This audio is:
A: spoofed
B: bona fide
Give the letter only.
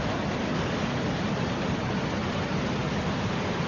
B